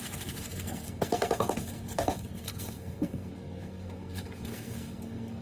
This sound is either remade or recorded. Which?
remade